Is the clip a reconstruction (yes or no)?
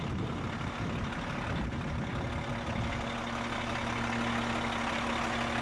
no